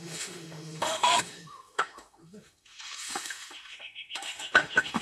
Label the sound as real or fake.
fake